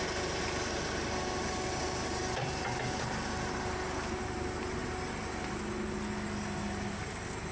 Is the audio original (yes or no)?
yes